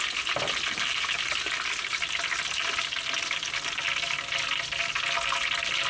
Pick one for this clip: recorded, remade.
recorded